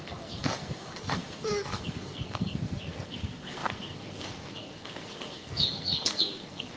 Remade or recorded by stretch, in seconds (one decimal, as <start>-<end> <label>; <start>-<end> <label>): 0.0-6.8 remade